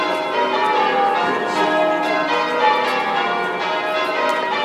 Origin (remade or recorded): recorded